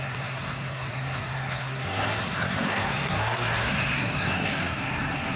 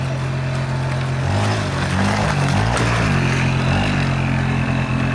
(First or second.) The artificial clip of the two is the first